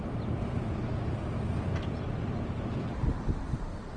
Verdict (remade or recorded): remade